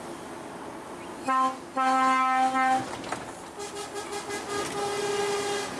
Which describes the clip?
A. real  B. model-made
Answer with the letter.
A